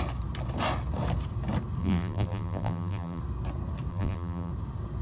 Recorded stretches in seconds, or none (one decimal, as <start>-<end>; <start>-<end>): 0.0-1.8; 3.2-3.9; 4.5-5.0